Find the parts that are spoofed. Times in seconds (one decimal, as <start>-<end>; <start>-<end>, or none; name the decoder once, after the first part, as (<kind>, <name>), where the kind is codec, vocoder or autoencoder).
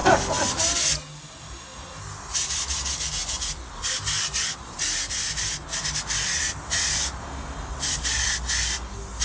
none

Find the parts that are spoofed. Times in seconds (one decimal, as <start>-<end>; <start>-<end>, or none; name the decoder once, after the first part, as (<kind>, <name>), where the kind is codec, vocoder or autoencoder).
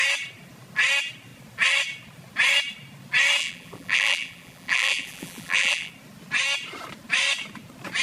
3.4-5.9 (vocoder, BigVGAN v2)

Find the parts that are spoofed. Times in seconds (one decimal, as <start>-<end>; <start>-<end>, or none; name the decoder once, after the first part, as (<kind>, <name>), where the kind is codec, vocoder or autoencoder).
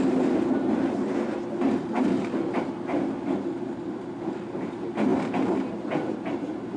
none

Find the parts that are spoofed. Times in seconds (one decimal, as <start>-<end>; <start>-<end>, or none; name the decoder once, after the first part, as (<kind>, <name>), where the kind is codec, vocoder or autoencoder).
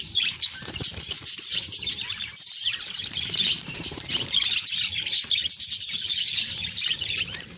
0.0-5.4 (vocoder, BigVGAN v2); 6.1-7.6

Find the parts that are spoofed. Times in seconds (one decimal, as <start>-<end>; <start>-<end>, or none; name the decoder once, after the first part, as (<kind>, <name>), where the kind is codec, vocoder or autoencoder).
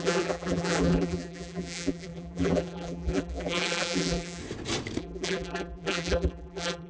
0.0-4.4 (vocoder, BigVGAN v2); 5.0-6.9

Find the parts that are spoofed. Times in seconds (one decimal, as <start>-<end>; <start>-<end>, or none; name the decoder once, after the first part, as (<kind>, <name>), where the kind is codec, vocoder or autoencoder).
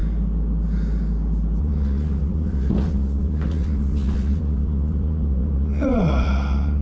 1.6-6.8 (vocoder, Vocos)